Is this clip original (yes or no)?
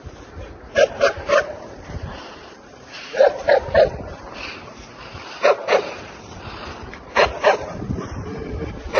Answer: no